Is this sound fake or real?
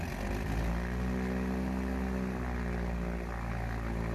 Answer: real